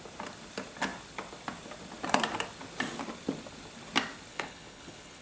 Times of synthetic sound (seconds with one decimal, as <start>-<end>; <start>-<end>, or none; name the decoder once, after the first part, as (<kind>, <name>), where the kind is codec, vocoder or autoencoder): 4.3-5.2 (codec, HILCodec)